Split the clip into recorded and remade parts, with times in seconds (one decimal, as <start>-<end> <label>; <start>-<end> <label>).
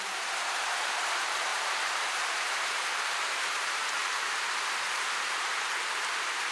0.0-6.5 remade